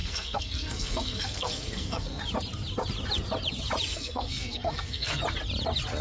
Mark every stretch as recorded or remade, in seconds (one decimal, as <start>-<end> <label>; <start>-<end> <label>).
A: 0.0-2.2 remade; 2.2-3.9 recorded; 3.9-5.2 remade; 5.2-6.0 recorded